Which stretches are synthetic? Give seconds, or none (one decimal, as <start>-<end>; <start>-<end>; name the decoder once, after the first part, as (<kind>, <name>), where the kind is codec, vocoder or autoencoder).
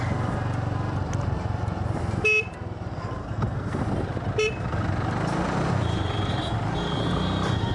3.2-3.8 (codec, SNAC)